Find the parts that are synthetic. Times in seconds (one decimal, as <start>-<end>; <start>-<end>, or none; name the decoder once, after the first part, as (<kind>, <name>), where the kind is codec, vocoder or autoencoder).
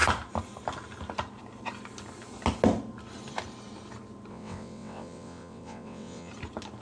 4.3-6.3 (vocoder, WaveNeXt)